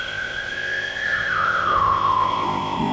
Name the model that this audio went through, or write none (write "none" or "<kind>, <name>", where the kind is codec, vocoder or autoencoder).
codec, ZipCodec